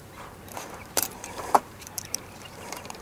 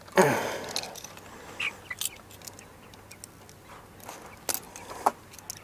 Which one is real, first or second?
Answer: second